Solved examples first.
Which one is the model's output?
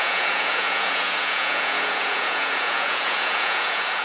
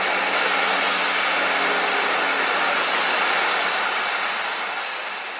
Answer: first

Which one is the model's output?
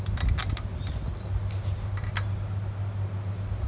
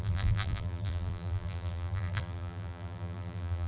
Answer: second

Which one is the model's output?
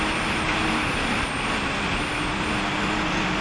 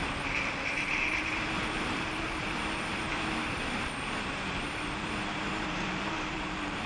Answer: second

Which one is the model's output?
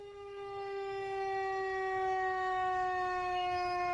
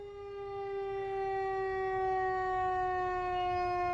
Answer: first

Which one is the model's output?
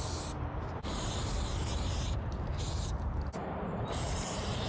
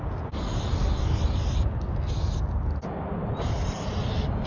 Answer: first